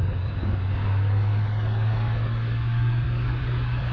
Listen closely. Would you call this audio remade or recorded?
remade